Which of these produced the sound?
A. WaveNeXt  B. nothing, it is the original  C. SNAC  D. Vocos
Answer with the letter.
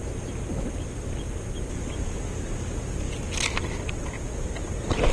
B